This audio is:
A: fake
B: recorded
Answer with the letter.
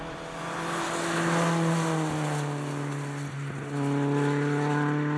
B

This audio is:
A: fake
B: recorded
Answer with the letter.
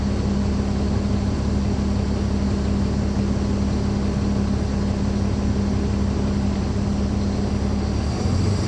B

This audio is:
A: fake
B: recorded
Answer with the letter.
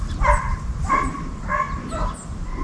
B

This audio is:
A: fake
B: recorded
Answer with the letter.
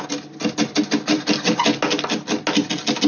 B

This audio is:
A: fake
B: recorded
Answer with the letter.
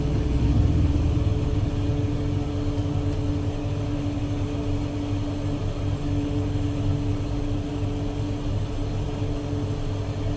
B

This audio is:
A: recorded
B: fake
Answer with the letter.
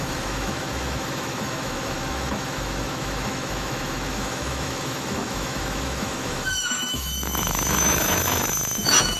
B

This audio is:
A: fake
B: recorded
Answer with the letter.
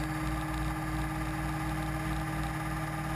B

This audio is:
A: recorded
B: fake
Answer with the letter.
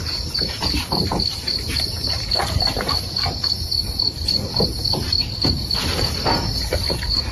B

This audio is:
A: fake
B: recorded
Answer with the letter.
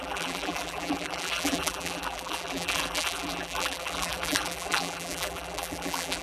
A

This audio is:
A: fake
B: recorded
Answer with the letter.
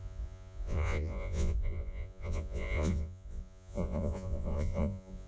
A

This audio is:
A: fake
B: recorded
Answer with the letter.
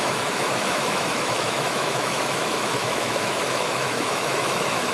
A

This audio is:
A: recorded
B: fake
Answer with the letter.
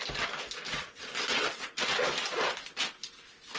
A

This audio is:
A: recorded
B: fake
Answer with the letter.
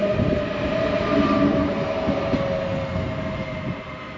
A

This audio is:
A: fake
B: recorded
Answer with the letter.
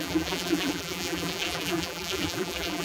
A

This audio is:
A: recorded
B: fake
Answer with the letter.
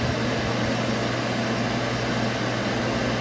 A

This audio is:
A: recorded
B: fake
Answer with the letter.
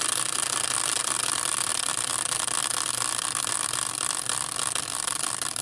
A